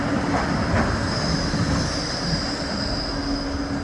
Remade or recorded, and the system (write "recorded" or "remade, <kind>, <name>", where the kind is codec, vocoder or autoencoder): recorded